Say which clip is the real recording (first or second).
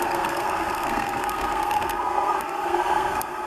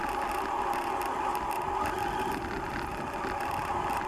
second